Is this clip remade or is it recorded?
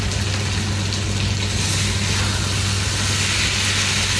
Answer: recorded